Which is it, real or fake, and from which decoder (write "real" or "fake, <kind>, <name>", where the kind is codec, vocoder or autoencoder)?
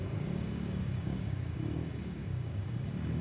fake, codec, DAC